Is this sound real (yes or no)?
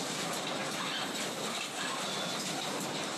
yes